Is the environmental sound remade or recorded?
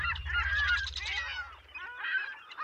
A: remade